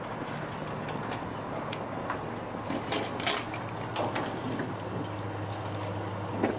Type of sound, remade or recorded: recorded